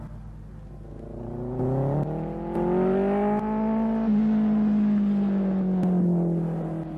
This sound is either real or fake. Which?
real